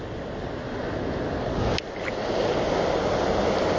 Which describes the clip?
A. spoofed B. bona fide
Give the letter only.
B